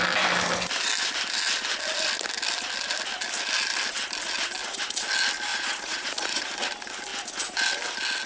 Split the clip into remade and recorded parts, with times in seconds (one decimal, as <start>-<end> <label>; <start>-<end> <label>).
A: 0.0-5.5 recorded; 5.5-6.4 remade; 6.4-8.3 recorded